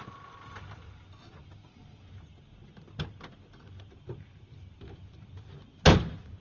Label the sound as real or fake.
real